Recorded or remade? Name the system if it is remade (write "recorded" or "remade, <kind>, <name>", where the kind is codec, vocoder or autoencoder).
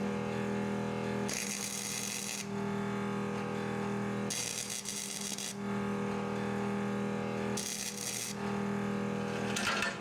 recorded